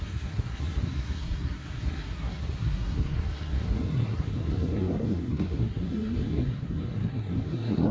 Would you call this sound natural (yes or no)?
no